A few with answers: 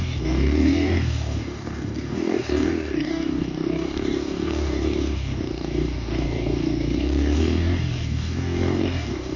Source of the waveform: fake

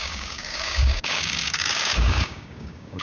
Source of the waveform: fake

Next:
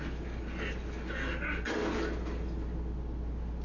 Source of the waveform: real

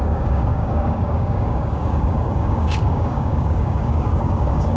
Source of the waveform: fake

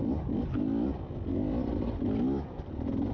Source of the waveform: real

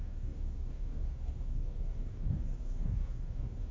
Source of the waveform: fake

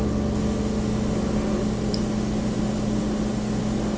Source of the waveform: real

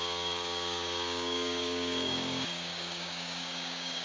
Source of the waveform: fake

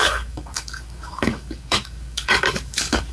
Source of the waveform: fake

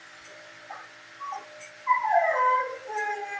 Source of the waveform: real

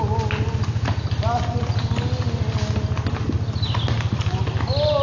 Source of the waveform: real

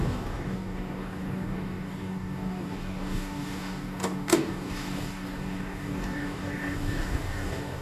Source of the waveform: fake